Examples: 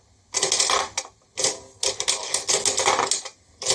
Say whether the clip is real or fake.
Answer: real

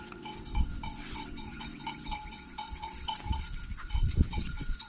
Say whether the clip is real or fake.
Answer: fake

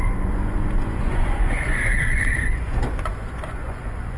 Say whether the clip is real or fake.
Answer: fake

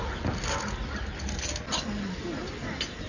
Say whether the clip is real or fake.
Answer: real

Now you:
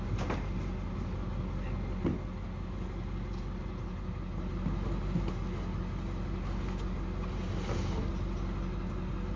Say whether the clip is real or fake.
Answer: real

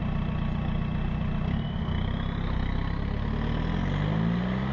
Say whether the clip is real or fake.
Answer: real